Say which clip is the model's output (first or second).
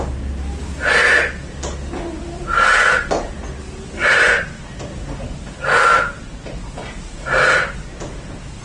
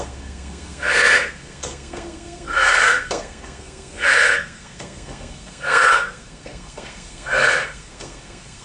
second